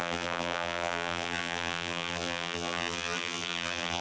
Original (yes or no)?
no